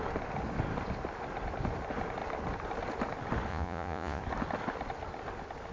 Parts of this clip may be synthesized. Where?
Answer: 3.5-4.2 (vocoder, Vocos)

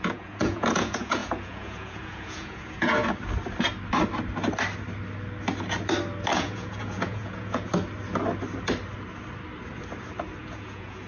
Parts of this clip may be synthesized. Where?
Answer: 0.0-3.0 (vocoder, Vocos); 6.3-7.7; 10.4-11.1

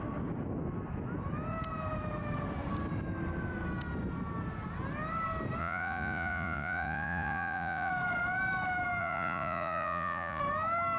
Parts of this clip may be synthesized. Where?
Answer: 5.6-7.9 (vocoder, Vocos); 9.0-10.4

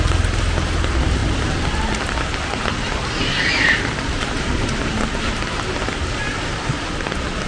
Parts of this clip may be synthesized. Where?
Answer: none

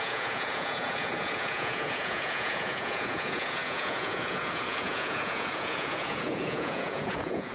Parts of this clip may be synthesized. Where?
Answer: 0.0-7.5 (vocoder, Vocos)

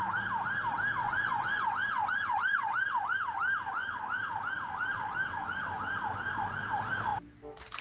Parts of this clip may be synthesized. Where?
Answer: 1.0-3.2 (vocoder, Vocos)

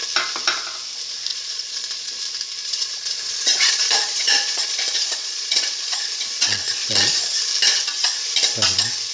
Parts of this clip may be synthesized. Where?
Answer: 1.3-2.2 (vocoder, Vocos); 2.6-7.1

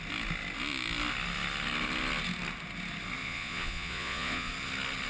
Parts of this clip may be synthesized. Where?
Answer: 3.2-4.5 (vocoder, Vocos)